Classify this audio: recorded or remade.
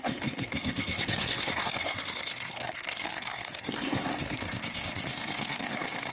remade